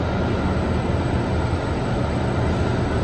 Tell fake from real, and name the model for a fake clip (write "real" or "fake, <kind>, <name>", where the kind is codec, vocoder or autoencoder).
real